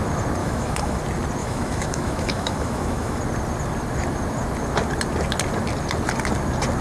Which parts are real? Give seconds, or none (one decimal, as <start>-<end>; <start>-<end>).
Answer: 0.0-0.4; 1.0-1.4; 3.2-6.8